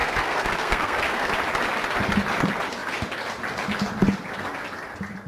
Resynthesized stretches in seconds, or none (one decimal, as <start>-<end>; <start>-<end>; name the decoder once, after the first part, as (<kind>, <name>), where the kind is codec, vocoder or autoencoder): 0.0-1.3 (codec, SNAC)